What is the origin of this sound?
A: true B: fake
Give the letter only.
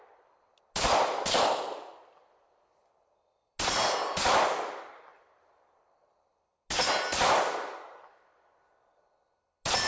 A